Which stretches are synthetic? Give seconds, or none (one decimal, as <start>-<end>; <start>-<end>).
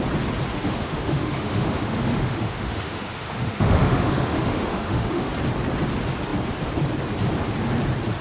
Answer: 0.5-5.3